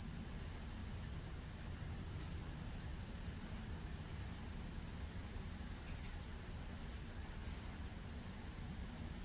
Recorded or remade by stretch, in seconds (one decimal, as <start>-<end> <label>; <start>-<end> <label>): 0.0-0.8 recorded; 0.8-4.4 remade; 4.4-5.2 recorded; 5.2-5.7 remade; 5.7-9.2 recorded